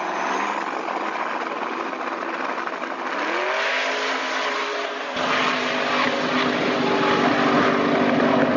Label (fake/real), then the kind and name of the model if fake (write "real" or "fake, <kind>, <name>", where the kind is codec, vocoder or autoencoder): real